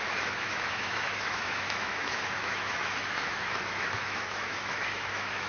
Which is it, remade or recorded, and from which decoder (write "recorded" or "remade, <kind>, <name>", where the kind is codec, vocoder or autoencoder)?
remade, autoencoder, DAC-VAE